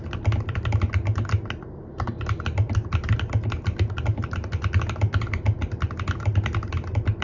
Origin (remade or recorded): recorded